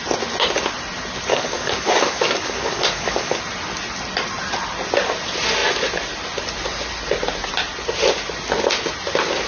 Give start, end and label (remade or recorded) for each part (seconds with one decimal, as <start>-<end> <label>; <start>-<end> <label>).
0.0-1.3 recorded; 1.3-3.4 remade; 3.4-9.5 recorded